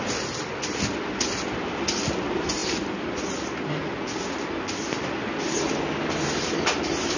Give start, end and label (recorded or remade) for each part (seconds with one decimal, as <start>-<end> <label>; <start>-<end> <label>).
0.0-7.2 recorded